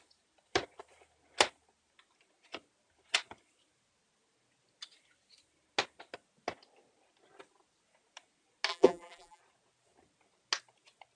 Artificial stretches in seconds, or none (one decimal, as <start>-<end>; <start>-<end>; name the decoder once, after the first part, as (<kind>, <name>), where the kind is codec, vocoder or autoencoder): 8.7-9.4 (vocoder, BigVGAN v2)